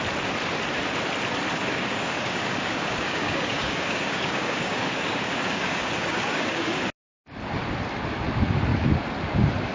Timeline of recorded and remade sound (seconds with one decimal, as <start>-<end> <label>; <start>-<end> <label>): 0.0-1.6 recorded; 1.6-6.8 remade; 6.8-9.7 recorded